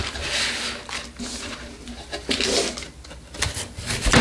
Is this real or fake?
real